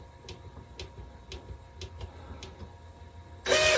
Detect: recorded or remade recorded